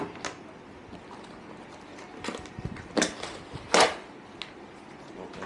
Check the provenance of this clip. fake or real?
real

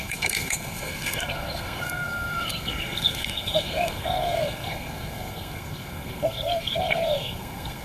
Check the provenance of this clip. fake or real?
fake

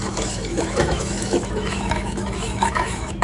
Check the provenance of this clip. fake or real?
fake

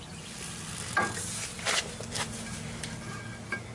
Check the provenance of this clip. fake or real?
real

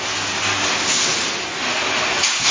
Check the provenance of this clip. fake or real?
real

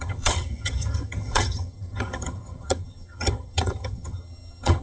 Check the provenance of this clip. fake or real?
fake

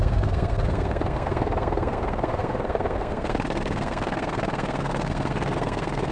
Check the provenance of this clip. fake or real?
fake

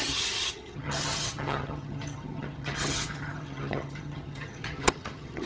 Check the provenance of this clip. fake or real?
fake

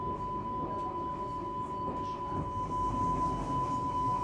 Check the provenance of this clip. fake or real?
real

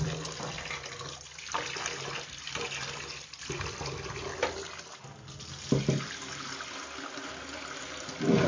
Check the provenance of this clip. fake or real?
real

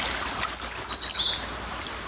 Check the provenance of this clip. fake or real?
real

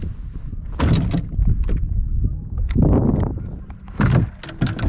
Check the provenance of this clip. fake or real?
real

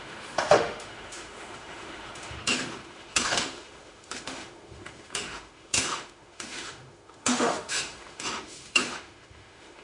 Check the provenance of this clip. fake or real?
fake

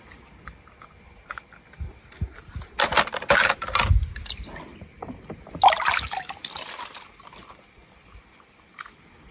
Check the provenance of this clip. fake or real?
real